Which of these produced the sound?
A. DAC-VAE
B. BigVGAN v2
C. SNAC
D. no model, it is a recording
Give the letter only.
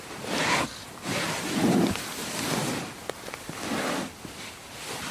D